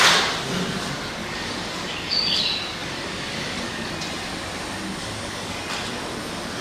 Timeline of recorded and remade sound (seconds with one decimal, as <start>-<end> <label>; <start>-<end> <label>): 0.0-1.2 recorded; 1.2-2.4 remade; 2.4-2.8 recorded; 2.8-3.9 remade; 3.9-5.0 recorded; 5.0-5.6 remade; 5.6-6.6 recorded